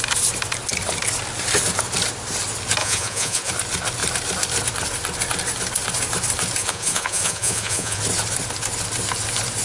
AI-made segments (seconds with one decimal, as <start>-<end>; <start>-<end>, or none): 2.8-3.5; 6.6-8.0